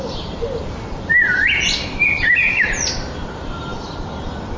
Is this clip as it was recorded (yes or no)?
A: no